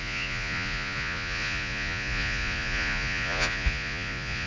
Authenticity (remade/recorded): remade